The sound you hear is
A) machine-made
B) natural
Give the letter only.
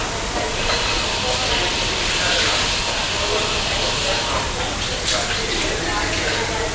B